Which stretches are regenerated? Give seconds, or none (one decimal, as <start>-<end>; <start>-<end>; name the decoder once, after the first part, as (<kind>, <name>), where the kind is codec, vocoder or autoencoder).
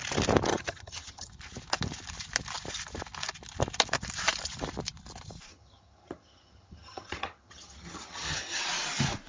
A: 0.5-1.3 (vocoder, HiFi-GAN); 5.5-8.6